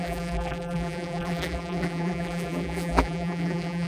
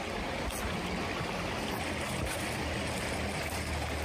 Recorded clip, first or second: second